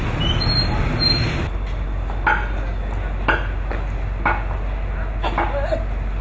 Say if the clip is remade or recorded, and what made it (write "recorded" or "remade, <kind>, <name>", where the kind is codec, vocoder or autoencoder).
recorded